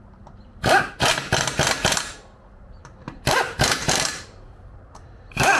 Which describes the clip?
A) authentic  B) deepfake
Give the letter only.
B